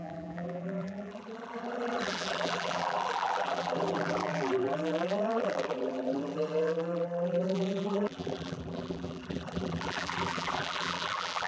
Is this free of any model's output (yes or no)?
no